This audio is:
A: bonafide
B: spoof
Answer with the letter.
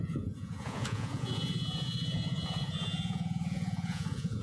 B